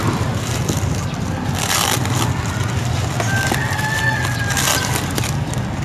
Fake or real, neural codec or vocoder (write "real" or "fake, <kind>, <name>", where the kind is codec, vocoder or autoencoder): real